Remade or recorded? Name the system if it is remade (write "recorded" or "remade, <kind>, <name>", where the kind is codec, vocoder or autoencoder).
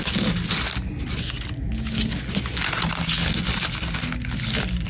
recorded